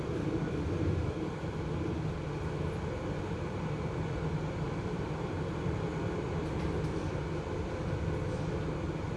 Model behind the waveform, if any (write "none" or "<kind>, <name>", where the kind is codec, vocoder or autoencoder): none